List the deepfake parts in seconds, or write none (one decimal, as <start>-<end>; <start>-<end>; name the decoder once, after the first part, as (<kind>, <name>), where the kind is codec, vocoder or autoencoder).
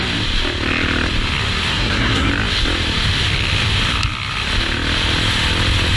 1.7-2.3 (codec, SNAC)